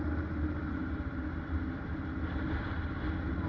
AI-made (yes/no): no